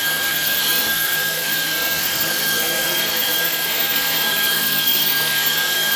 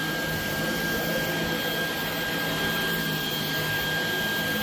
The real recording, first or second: second